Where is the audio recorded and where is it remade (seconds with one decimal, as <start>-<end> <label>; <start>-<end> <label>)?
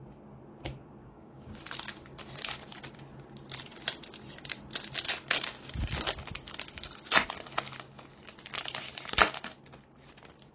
0.0-1.0 recorded; 1.0-1.6 remade; 1.6-10.5 recorded